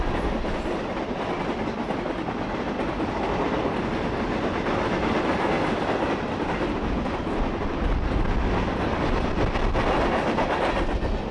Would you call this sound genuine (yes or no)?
yes